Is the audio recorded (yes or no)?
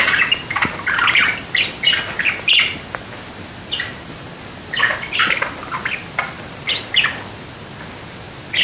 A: yes